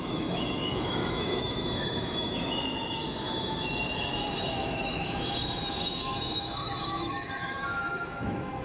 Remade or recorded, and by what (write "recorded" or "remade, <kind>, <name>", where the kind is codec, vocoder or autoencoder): remade, autoencoder, DAC-VAE